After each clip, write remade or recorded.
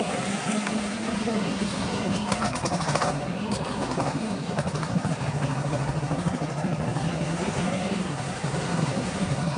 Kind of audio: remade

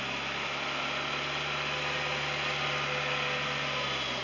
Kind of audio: recorded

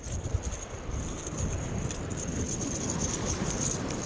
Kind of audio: remade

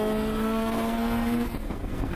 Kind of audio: remade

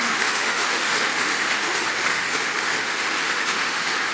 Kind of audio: remade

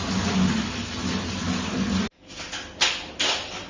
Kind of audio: recorded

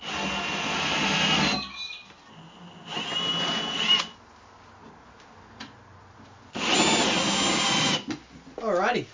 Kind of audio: recorded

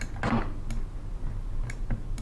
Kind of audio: recorded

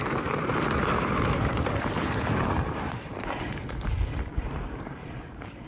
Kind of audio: remade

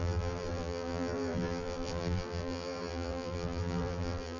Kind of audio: remade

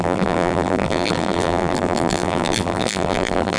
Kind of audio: remade